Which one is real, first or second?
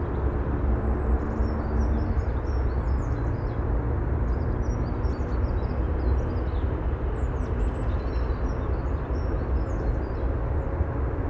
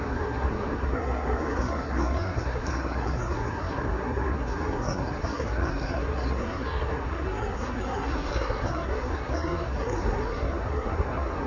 first